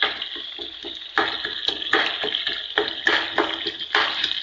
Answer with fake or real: real